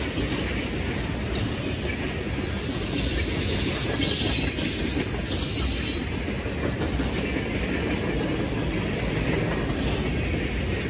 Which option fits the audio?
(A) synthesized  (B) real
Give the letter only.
B